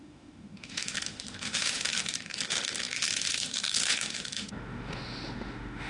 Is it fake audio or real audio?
fake